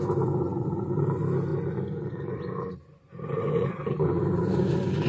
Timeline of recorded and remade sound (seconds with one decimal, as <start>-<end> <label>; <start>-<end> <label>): 0.0-1.5 remade; 1.5-2.1 recorded; 2.1-5.1 remade